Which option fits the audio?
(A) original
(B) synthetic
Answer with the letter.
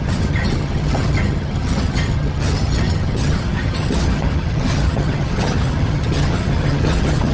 B